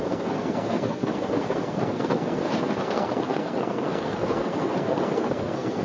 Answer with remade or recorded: remade